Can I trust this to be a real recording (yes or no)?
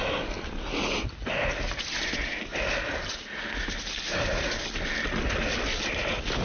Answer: yes